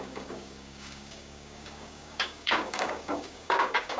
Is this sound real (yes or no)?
no